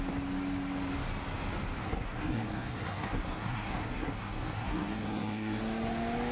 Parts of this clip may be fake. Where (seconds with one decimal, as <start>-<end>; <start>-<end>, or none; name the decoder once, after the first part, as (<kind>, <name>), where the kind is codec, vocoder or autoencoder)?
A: 1.8-5.6 (codec, SNAC)